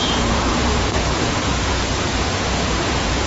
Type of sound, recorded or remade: remade